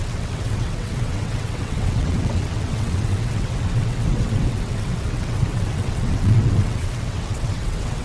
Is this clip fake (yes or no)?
yes